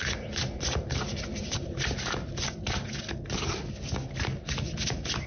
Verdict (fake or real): real